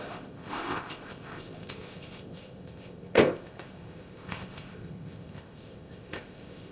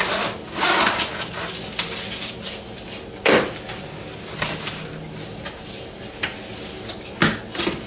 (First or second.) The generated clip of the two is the first